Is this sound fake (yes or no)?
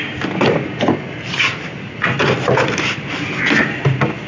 no